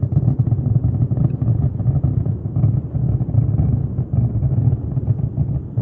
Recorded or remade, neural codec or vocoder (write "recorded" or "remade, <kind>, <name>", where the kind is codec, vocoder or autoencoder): recorded